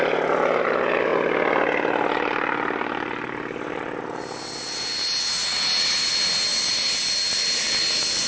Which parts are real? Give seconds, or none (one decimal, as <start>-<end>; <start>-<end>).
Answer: 0.0-6.5; 7.1-8.3